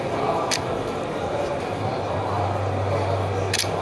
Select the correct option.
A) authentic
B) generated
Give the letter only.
A